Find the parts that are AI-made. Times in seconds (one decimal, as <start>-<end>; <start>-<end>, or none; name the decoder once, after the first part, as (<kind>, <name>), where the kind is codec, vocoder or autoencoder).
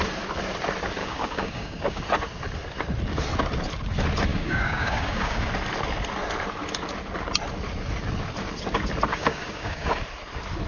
1.0-2.0 (codec, DAC); 4.3-5.5; 9.1-10.0